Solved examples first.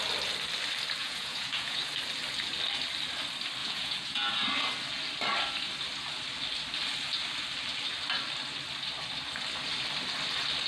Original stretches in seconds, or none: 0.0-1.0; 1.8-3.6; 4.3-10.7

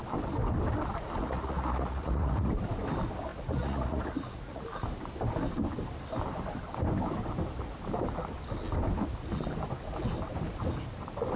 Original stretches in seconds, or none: 0.0-1.2; 2.5-3.3; 4.6-11.4

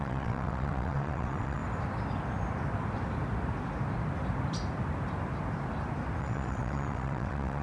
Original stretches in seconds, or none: 1.6-6.2

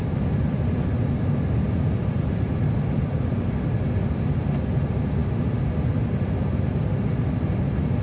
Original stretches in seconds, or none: 0.0-8.0

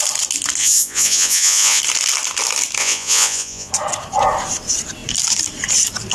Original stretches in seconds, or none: 0.0-0.6; 1.8-2.8; 3.7-6.1